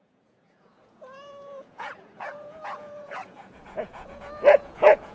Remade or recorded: remade